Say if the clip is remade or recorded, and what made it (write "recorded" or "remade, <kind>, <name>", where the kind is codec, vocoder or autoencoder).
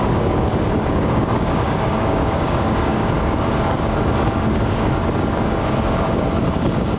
remade, codec, DAC